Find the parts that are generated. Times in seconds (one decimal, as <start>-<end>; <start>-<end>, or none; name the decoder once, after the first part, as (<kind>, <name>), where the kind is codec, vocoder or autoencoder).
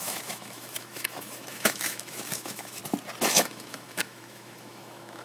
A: 0.0-2.8 (autoencoder, DAC-VAE); 3.3-5.2